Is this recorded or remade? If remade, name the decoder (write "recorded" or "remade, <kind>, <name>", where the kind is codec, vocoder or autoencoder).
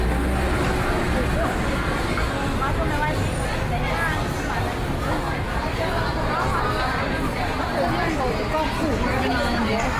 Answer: recorded